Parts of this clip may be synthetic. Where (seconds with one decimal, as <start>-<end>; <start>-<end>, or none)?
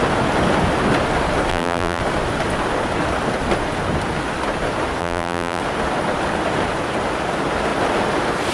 1.5-2.0; 5.0-5.6